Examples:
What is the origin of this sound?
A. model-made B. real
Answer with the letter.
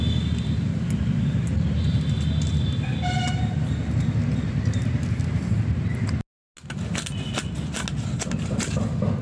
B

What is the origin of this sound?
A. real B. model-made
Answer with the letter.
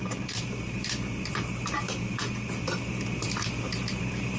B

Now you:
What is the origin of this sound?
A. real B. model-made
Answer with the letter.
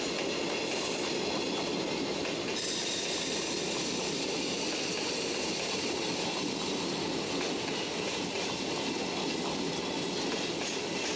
A